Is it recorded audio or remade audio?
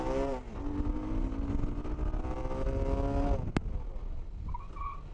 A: recorded